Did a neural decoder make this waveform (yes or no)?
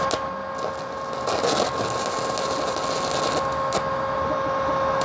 no